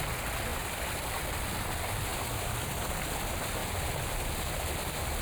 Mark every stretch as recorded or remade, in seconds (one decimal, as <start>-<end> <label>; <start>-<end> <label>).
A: 0.0-0.5 recorded; 0.5-1.0 remade; 1.0-2.1 recorded; 2.1-2.7 remade; 2.7-5.2 recorded